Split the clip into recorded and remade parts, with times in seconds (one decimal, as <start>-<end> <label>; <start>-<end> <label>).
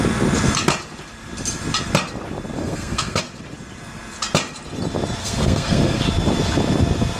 0.0-2.6 recorded; 2.6-3.2 remade; 3.2-5.2 recorded; 5.2-6.0 remade; 6.0-7.2 recorded